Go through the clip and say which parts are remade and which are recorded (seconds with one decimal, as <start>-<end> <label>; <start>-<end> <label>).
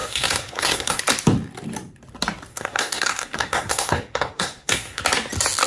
0.0-1.0 remade; 1.0-2.5 recorded; 2.5-5.0 remade; 5.0-5.7 recorded